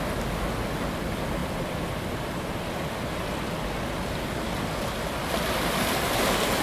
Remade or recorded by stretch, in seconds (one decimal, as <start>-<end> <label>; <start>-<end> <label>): 0.0-6.6 recorded